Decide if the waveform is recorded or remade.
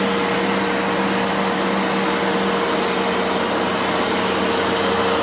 recorded